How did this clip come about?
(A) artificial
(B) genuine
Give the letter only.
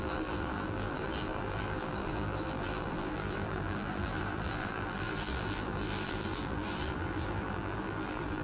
A